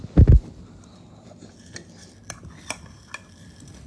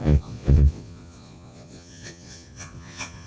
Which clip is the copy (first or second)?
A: second